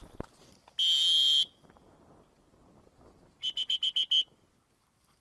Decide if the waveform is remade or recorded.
recorded